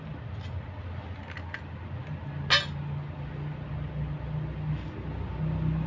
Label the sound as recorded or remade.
recorded